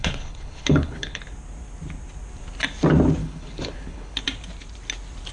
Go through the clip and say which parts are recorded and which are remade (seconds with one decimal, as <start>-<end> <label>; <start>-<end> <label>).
0.0-1.2 remade; 1.2-3.2 recorded; 3.2-4.2 remade; 4.2-5.3 recorded